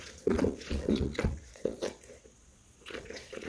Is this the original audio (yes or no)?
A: no